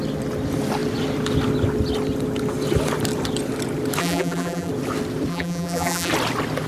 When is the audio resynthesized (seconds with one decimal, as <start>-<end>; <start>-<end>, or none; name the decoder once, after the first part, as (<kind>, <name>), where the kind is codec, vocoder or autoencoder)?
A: 4.0-4.7 (vocoder, BigVGAN v2); 5.3-6.1